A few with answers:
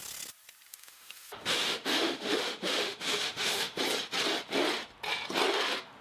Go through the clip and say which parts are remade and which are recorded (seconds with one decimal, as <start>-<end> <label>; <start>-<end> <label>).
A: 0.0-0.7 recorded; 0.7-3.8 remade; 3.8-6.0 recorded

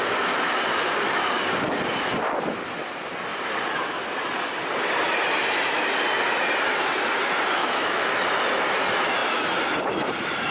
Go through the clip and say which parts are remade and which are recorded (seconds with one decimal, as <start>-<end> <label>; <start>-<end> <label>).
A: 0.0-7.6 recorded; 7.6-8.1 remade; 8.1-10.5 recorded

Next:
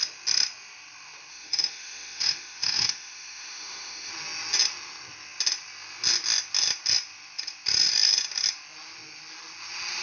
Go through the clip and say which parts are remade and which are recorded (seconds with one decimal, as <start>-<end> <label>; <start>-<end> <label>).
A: 0.0-1.3 recorded; 1.3-4.1 remade; 4.1-10.0 recorded

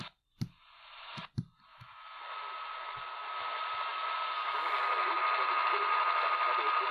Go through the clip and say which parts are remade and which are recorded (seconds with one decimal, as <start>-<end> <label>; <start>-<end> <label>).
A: 0.0-1.7 recorded; 1.7-2.2 remade; 2.2-6.9 recorded

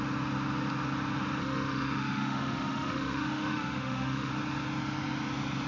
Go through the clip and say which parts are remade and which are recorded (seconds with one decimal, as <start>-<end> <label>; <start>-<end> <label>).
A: 0.0-1.4 recorded; 1.4-4.3 remade; 4.3-5.7 recorded

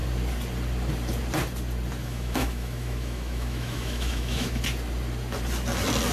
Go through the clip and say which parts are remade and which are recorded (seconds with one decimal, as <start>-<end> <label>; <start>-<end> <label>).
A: 0.0-2.0 recorded; 2.0-4.6 remade; 4.6-6.1 recorded